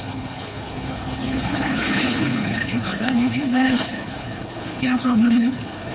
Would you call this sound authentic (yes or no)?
no